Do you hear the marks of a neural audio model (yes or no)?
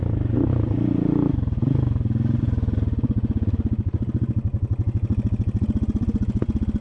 no